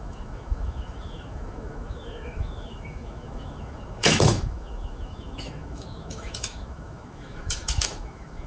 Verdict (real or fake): fake